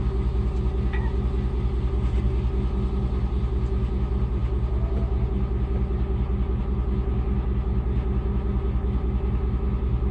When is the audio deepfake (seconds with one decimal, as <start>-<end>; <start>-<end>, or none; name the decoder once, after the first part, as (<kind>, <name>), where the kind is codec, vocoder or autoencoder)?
none